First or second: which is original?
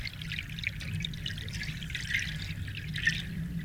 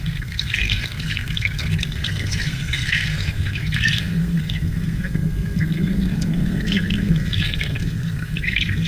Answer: first